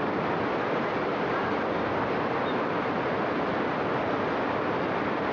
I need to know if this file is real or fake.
real